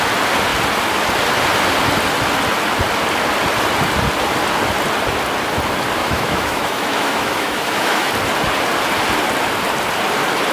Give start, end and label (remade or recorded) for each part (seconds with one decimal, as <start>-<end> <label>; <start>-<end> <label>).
0.0-6.0 recorded; 6.0-8.1 remade; 8.1-10.5 recorded

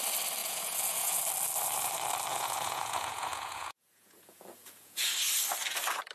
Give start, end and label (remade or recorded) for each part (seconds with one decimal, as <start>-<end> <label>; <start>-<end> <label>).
0.0-0.4 recorded; 0.4-1.2 remade; 1.2-2.3 recorded; 2.3-5.1 remade; 5.1-6.1 recorded

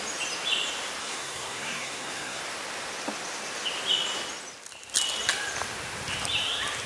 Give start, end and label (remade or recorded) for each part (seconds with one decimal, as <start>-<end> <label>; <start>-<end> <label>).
0.0-1.0 recorded; 1.0-2.4 remade; 2.4-6.9 recorded